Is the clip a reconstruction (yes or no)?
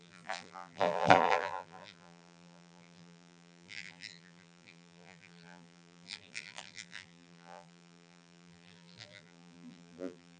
yes